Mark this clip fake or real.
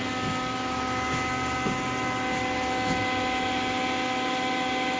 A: real